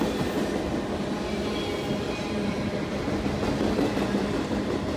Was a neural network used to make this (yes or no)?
no